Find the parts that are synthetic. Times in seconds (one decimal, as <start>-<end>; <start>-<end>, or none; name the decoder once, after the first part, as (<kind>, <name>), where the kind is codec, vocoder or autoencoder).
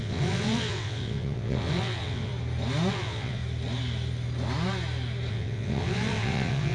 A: 0.0-2.3 (vocoder, WaveNeXt); 2.9-3.4; 5.3-6.7